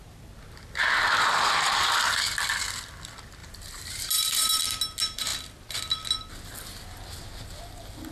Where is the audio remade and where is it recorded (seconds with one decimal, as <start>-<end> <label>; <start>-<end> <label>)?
0.0-3.4 recorded; 3.4-4.6 remade; 4.6-8.1 recorded